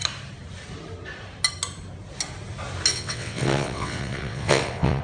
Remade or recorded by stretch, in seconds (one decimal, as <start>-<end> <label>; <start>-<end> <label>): 0.0-2.9 recorded; 2.9-5.0 remade